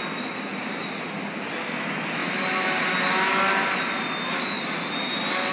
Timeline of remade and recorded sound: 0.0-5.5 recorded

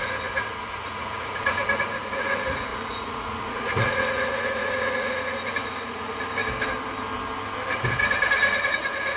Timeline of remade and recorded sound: 0.0-6.4 remade; 6.4-8.7 recorded; 8.7-9.2 remade

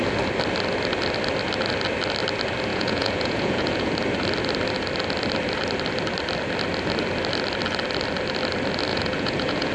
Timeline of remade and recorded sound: 0.0-2.7 recorded; 2.7-3.9 remade; 3.9-8.9 recorded; 8.9-9.7 remade

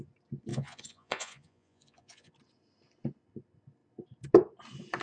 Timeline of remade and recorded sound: 0.0-0.5 recorded; 0.5-2.3 remade; 2.3-5.0 recorded

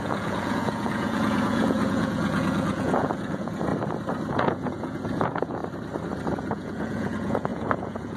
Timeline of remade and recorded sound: 0.0-3.7 remade; 3.7-4.3 recorded; 4.3-5.6 remade; 5.6-6.3 recorded; 6.3-8.2 remade

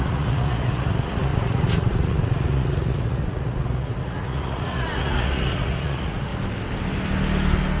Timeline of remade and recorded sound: 0.0-6.3 remade; 6.3-7.8 recorded